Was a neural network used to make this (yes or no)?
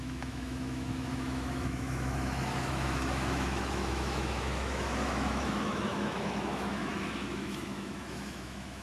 yes